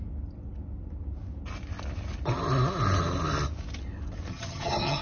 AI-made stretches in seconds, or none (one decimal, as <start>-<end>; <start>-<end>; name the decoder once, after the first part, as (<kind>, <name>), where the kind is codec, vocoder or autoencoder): 4.3-5.0 (vocoder, HiFi-GAN)